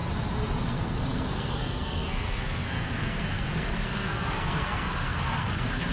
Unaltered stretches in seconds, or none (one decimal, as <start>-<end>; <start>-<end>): 0.0-0.6